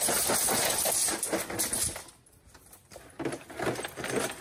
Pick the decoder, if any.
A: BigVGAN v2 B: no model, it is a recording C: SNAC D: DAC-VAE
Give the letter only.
B